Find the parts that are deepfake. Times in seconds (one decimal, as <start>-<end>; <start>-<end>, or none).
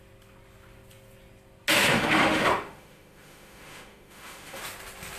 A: 1.9-4.6